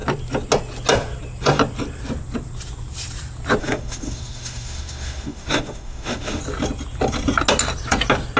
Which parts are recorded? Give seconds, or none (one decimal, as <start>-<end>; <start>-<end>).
0.0-3.6; 6.4-8.4